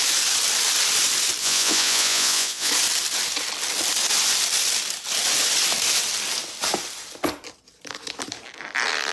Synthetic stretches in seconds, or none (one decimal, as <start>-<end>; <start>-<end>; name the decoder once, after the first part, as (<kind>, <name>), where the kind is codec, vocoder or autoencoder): 1.4-2.7 (vocoder, Vocos)